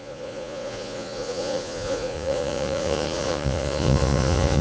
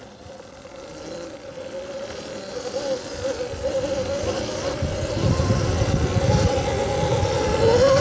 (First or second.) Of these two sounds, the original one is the second